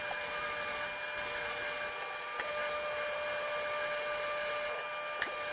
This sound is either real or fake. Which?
real